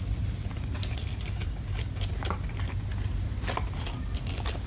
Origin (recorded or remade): recorded